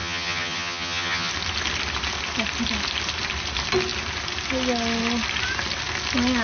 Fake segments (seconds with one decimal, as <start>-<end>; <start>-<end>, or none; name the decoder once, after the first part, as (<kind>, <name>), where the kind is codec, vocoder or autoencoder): 0.0-1.3 (vocoder, HiFi-GAN)